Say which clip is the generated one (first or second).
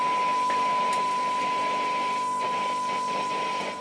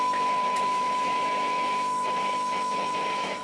second